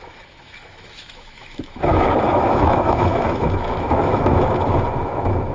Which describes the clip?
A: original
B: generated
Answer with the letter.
B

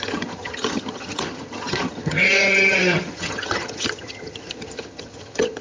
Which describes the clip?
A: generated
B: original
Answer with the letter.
A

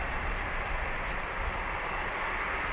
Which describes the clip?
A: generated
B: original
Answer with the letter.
B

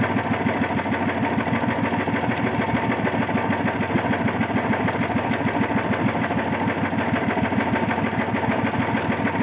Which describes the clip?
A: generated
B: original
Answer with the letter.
B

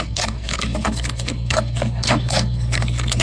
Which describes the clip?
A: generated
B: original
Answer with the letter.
A